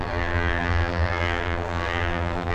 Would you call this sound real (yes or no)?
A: no